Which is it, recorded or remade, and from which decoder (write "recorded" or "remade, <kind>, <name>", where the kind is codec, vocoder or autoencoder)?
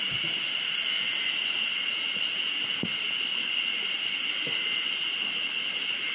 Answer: recorded